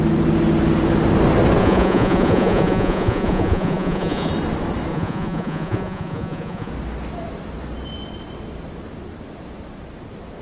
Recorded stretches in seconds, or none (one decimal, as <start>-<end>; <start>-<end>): 0.0-1.6; 4.3-4.9; 6.7-10.4